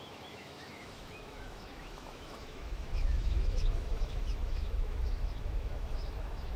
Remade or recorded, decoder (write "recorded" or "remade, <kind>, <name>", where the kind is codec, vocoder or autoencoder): remade, autoencoder, DAC-VAE